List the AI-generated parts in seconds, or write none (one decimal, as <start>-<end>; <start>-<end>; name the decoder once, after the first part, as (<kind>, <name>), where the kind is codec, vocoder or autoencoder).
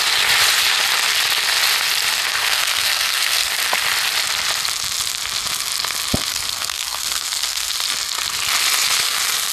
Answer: 2.4-3.5 (codec, SNAC); 6.3-7.7